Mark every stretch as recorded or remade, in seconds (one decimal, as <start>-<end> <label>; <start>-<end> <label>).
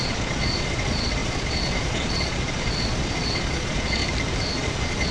0.0-4.0 remade; 4.0-4.5 recorded; 4.5-5.1 remade